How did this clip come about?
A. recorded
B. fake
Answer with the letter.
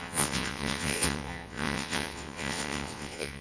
B